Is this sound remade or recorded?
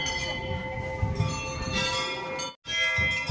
recorded